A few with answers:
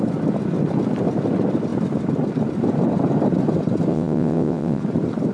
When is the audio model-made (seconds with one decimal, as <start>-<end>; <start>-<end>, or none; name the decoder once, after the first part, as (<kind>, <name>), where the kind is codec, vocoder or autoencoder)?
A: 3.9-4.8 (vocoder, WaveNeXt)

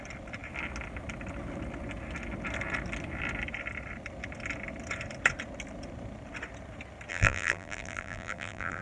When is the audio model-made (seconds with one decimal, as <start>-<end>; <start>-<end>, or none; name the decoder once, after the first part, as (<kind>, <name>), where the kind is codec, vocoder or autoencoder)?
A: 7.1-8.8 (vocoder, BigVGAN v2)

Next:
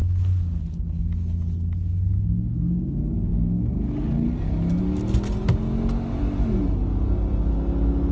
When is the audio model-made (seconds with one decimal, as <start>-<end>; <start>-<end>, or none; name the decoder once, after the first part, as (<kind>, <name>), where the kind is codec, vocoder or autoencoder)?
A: none

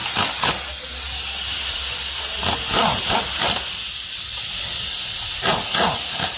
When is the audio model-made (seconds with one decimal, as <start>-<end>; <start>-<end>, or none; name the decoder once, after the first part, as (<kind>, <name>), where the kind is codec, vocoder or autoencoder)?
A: none

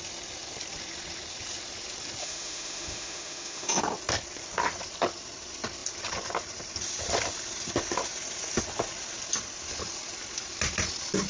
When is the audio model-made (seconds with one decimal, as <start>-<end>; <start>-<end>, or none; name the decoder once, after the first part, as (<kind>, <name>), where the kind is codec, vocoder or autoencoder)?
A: 2.2-3.8 (autoencoder, DAC-VAE)

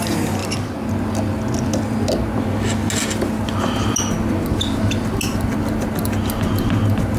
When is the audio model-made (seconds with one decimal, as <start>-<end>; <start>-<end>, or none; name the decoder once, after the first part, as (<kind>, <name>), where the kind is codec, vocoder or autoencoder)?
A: none